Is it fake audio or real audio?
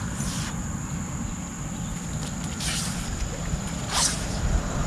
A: real